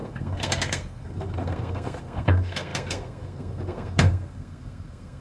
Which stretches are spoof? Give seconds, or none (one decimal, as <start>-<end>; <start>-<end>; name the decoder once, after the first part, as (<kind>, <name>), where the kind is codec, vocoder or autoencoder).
0.0-5.2 (codec, SNAC)